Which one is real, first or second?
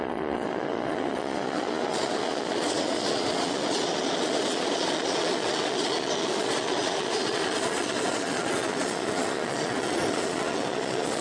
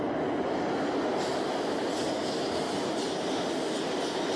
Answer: second